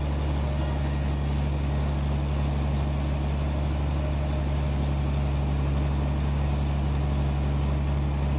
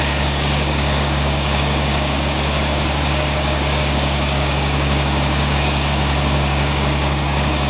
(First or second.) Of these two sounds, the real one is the first